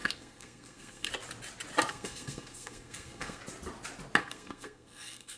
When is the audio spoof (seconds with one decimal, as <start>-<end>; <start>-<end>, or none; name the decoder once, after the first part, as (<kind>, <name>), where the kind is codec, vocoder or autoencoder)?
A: 0.0-1.1 (codec, SNAC); 1.9-3.4; 4.2-5.4